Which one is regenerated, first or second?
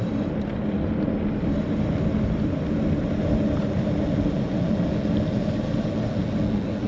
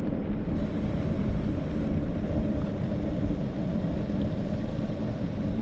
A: second